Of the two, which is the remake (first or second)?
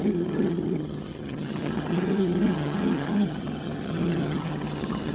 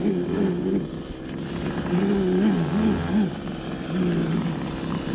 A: first